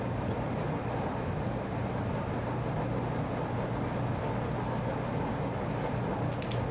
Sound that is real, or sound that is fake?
real